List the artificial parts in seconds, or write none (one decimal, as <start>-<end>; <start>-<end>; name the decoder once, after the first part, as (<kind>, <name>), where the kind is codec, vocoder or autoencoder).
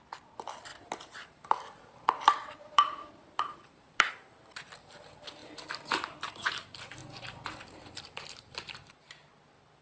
0.7-4.1 (vocoder, BigVGAN v2); 7.0-9.3